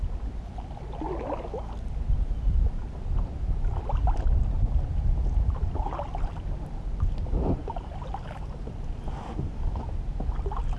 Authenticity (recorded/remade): recorded